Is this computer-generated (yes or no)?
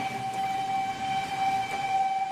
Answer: no